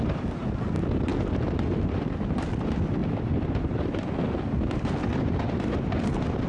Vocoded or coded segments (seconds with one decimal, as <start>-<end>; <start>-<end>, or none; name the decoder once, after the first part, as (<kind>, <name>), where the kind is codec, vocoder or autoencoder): 3.0-4.1 (vocoder, BigVGAN v2); 5.1-6.0